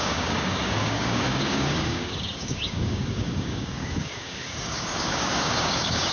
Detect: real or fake fake